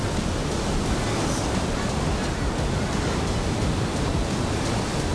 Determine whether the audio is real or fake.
real